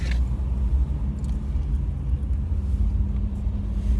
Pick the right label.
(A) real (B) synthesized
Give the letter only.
A